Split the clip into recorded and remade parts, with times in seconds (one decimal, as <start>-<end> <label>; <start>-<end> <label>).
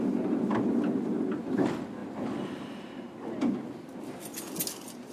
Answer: 0.0-5.1 recorded